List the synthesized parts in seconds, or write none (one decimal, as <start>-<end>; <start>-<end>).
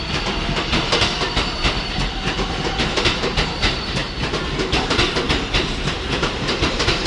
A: 0.0-4.0; 5.3-7.1